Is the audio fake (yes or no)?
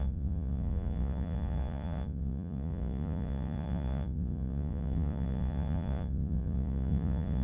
yes